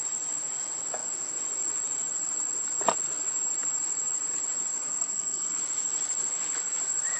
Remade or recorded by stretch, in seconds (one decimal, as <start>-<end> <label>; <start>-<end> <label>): 0.0-4.9 recorded; 4.9-5.6 remade; 5.6-7.2 recorded